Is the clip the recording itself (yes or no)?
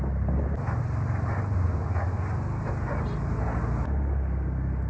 yes